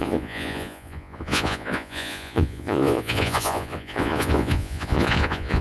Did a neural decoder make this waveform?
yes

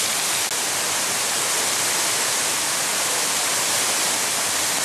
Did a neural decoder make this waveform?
no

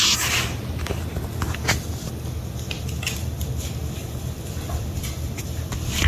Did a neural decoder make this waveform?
no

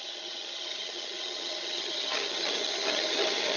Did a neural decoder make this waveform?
yes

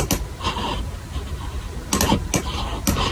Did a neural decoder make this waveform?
no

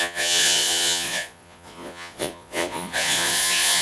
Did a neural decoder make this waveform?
yes